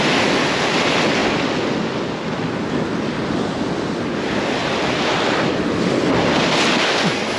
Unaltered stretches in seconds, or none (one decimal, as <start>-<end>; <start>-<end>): 0.0-7.4